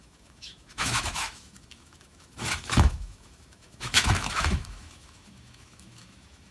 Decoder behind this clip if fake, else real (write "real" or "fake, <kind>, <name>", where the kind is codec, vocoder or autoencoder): fake, autoencoder, DAC-VAE